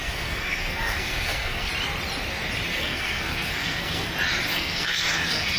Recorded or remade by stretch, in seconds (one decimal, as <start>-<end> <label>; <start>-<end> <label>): 0.0-1.7 remade; 1.7-2.7 recorded; 2.7-4.1 remade; 4.1-4.5 recorded; 4.5-5.6 remade